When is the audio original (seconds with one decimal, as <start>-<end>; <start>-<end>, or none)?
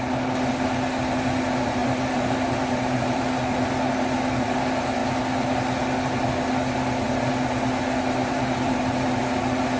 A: 0.0-1.8; 3.7-8.2; 9.2-9.8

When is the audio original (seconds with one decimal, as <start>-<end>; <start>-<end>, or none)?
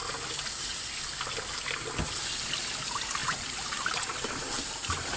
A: 0.0-3.2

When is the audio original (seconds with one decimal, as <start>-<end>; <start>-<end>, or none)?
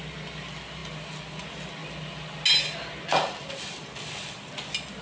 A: 0.0-5.0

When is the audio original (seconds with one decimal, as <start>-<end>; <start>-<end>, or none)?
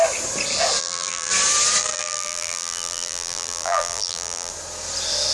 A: 0.0-0.8; 1.3-1.8; 4.5-5.3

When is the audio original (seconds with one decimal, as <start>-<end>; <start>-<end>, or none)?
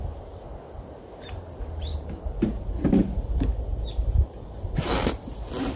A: 0.0-1.9; 3.3-3.7; 4.9-5.8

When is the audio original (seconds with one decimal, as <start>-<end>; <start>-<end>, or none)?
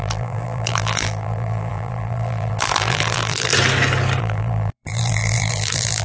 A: 3.5-4.2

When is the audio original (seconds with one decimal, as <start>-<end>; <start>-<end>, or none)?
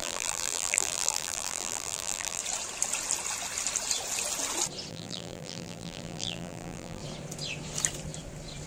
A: 2.4-4.9; 7.0-8.7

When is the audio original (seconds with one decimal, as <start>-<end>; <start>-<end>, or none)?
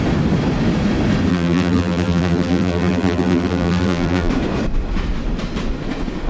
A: 0.0-1.3; 4.3-6.3